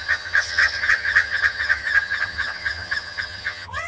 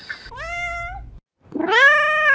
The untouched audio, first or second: second